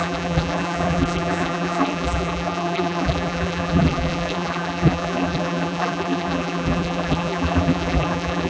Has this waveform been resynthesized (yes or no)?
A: yes